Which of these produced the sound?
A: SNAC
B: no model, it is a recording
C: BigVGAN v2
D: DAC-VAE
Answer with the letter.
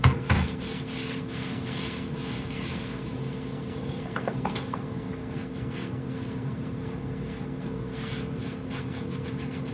A